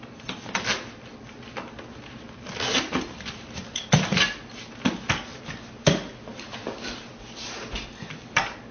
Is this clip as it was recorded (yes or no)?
yes